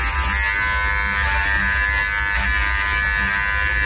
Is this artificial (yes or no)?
no